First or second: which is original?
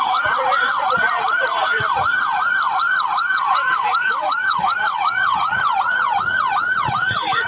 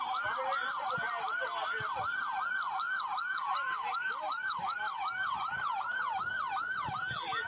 second